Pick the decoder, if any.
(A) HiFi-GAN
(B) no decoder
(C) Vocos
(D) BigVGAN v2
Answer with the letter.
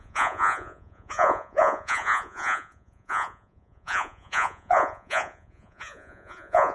C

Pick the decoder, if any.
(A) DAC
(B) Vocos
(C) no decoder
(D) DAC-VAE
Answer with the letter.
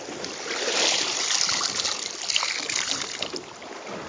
C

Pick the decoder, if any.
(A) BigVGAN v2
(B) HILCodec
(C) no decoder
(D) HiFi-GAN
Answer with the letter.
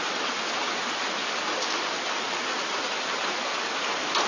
C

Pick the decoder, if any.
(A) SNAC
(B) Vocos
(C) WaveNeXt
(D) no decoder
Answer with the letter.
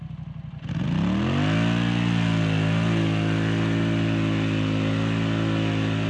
D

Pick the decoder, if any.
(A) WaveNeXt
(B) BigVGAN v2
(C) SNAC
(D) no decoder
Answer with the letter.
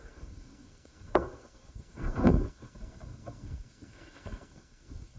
C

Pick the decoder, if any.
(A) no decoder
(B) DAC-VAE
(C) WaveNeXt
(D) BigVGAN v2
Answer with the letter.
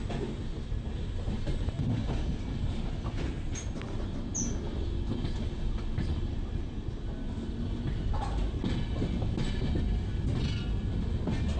A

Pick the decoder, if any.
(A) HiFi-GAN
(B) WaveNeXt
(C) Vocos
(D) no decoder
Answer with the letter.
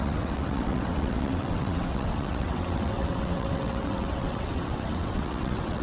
B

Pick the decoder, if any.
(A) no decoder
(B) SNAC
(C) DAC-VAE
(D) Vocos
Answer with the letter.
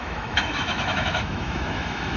C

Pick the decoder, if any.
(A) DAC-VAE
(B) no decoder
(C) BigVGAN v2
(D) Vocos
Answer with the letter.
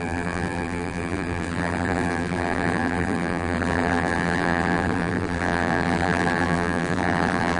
C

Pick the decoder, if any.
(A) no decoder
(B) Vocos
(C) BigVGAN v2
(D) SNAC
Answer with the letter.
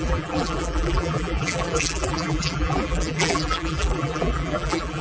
C